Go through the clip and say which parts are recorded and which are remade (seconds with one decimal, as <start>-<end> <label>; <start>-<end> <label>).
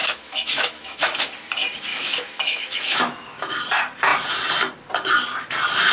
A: 0.0-1.3 remade; 1.3-1.9 recorded; 1.9-3.6 remade; 3.6-5.9 recorded